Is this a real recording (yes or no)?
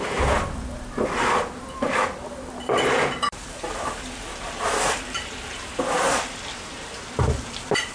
no